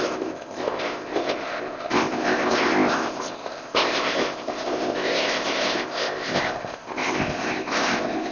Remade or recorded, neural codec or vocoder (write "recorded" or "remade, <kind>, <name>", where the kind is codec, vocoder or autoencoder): remade, codec, ZipCodec